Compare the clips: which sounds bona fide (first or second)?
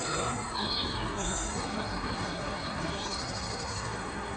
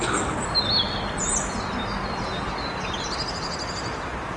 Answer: second